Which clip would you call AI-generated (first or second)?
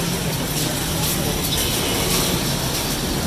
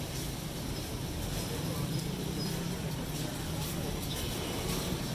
second